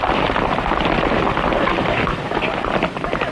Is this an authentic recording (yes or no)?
yes